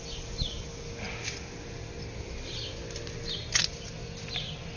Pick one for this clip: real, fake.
real